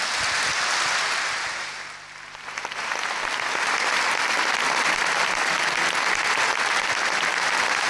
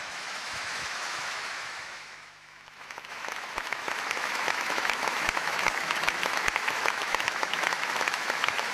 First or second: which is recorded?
first